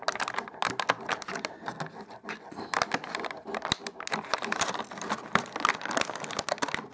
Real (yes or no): yes